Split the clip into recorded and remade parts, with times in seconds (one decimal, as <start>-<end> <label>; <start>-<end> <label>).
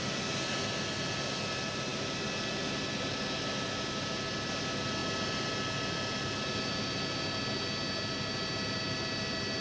0.0-9.6 recorded